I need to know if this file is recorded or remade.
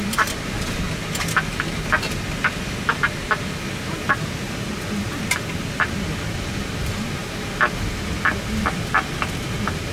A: recorded